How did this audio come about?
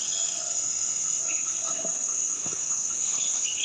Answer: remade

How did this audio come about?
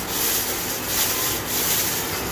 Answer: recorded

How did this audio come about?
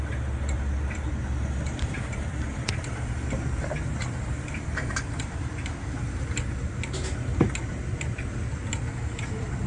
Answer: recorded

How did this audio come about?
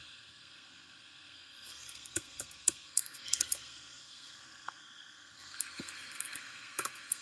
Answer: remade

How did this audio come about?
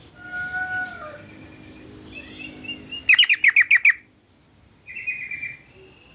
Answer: recorded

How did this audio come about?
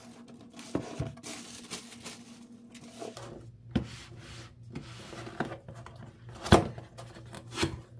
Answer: recorded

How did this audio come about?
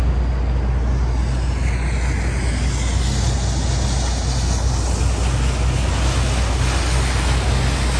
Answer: recorded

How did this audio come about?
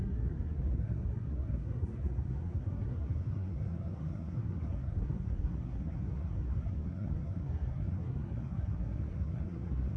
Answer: remade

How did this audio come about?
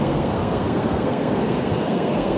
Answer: remade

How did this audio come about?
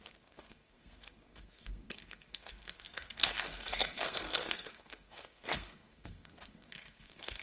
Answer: remade